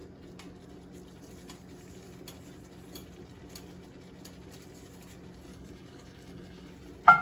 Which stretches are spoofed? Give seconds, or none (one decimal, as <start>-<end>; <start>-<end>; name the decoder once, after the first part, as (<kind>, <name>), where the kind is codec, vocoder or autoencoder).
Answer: 5.5-6.7 (codec, DAC)